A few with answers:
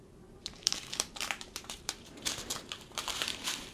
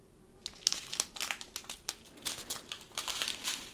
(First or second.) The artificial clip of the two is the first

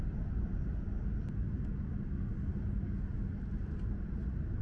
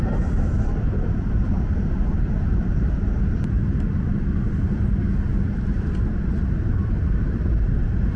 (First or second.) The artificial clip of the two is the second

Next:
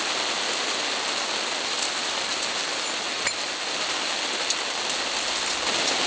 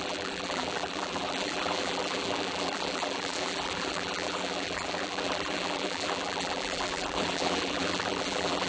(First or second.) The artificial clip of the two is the second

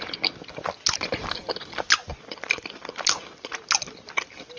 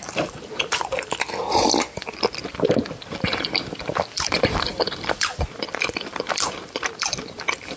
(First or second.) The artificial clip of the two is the second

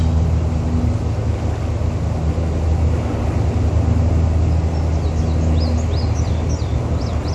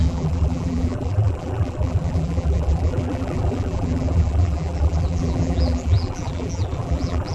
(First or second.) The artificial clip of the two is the second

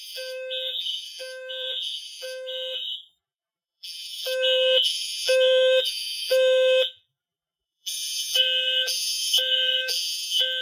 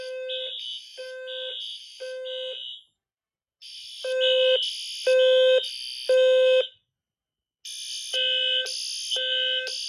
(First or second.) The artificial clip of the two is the first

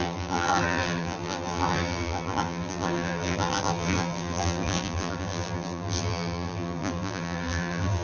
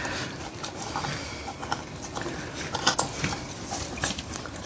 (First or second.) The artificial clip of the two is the first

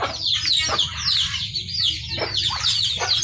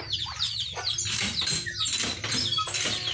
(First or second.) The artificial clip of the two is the first